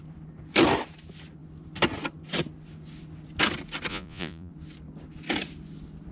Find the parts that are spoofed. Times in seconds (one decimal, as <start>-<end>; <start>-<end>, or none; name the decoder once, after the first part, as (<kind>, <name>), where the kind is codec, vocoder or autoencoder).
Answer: 3.9-4.5 (vocoder, Vocos)